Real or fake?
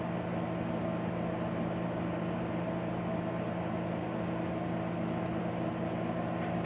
real